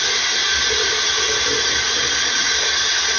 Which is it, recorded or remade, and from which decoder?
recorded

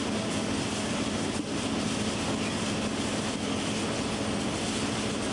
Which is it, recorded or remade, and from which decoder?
recorded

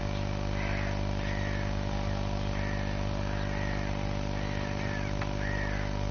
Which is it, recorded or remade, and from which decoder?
recorded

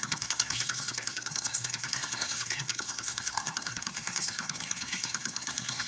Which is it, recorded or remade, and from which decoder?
remade, codec, SNAC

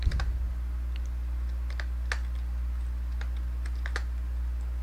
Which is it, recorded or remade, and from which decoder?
recorded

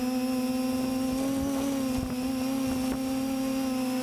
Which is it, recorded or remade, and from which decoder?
recorded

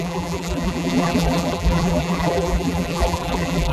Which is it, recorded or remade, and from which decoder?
remade, vocoder, BigVGAN v2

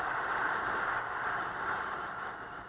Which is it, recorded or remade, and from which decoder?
recorded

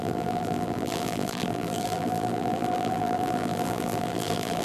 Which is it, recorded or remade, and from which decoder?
remade, vocoder, BigVGAN v2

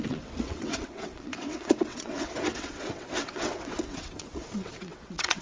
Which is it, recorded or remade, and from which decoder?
remade, vocoder, WaveNeXt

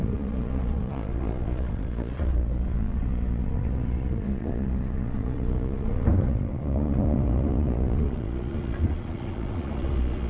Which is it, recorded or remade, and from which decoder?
remade, vocoder, Vocos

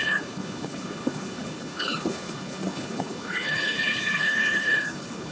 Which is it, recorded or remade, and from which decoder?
remade, codec, HILCodec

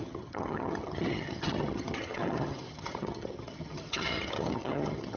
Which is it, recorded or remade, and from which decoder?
remade, vocoder, HiFi-GAN